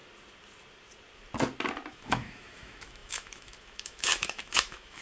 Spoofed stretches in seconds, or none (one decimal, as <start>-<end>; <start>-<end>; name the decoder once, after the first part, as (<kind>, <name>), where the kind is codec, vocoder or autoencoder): 1.9-5.0 (autoencoder, DAC-VAE)